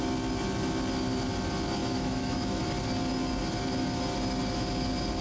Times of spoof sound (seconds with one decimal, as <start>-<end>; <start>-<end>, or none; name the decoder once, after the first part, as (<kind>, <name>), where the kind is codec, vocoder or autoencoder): 1.8-2.6 (autoencoder, DAC-VAE)